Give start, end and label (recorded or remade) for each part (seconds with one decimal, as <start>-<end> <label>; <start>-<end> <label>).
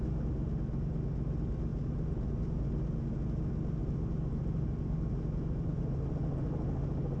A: 0.0-1.7 recorded; 1.7-2.6 remade; 2.6-3.8 recorded; 3.8-5.8 remade; 5.8-7.2 recorded